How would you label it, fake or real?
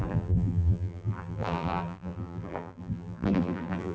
fake